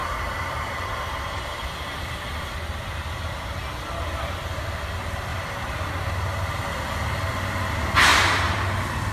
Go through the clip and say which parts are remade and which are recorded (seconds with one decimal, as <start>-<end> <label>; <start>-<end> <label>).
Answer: 0.0-3.6 remade; 3.6-5.3 recorded; 5.3-5.9 remade; 5.9-8.1 recorded; 8.1-9.1 remade